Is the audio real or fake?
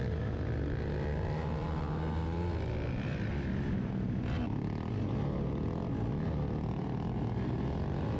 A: real